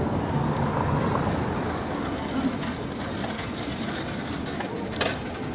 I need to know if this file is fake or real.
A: real